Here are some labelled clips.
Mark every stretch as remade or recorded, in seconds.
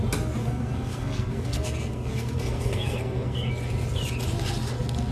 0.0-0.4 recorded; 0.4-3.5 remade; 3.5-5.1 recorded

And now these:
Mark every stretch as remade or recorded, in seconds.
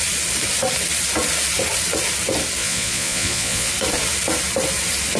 0.0-2.6 recorded; 2.6-3.7 remade; 3.7-5.2 recorded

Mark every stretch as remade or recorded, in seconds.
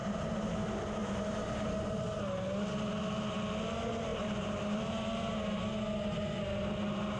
0.0-0.6 remade; 0.6-1.0 recorded; 1.0-1.7 remade; 1.7-4.1 recorded; 4.1-5.6 remade; 5.6-7.2 recorded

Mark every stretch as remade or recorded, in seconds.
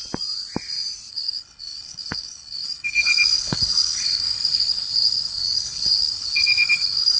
0.0-1.1 recorded; 1.1-7.2 remade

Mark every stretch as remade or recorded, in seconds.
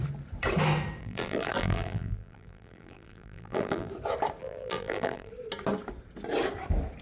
0.0-1.0 recorded; 1.0-3.9 remade; 3.9-4.4 recorded; 4.4-5.3 remade; 5.3-7.0 recorded